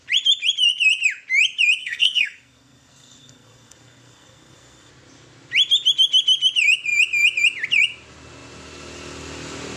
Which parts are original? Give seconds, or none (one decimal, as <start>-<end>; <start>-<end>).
0.0-1.8; 4.9-9.8

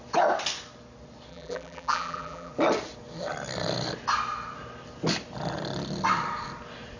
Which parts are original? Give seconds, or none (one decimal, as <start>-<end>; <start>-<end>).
0.0-1.3; 2.5-7.0

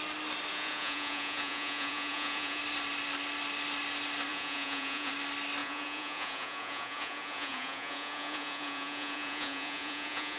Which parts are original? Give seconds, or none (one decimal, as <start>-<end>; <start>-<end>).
0.0-0.5; 2.6-4.3; 5.1-5.6

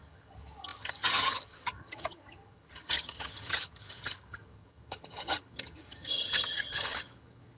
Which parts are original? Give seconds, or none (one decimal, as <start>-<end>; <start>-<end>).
none

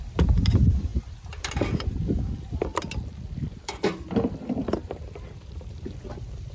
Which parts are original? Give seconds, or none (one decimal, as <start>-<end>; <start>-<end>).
2.7-3.5

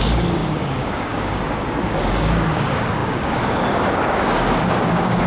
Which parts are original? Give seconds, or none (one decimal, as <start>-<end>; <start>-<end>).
none

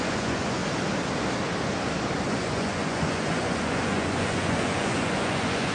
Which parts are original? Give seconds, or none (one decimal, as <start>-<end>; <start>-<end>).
0.6-2.3